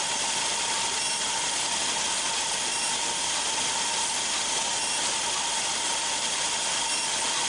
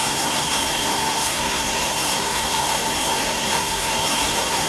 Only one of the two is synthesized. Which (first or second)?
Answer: second